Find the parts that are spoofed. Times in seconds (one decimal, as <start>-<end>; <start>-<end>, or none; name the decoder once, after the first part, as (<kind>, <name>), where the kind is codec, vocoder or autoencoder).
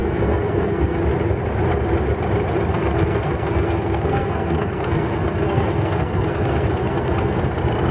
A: 0.0-1.0 (codec, SNAC); 2.7-7.4